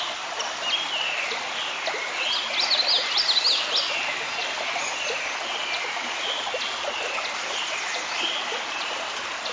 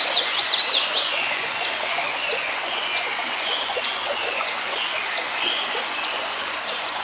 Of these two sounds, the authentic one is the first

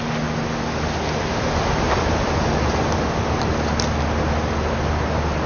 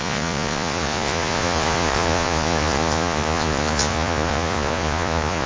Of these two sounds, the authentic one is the first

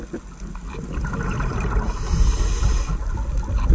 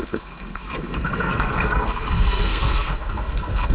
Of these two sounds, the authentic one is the first